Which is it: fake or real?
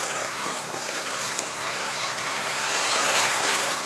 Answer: fake